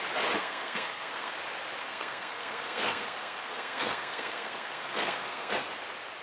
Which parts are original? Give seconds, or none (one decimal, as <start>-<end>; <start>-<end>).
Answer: 0.0-0.4; 1.3-1.8; 5.5-6.2